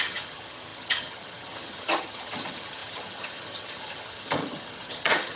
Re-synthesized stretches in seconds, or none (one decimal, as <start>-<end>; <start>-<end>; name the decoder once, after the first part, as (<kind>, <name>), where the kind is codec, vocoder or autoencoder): 0.0-5.4 (vocoder, HiFi-GAN)